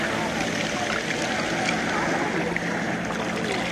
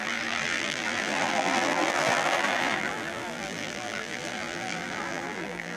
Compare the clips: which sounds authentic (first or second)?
first